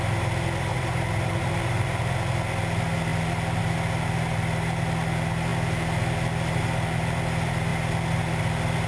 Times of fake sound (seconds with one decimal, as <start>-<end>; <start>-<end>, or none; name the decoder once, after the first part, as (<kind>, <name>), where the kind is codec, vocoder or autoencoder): 0.7-2.0 (vocoder, BigVGAN v2)